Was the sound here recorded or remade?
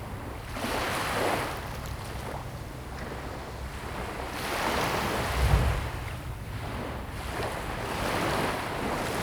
recorded